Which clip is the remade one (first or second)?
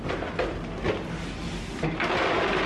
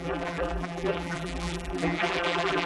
second